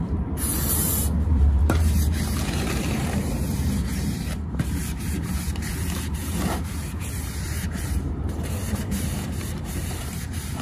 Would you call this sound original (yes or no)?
no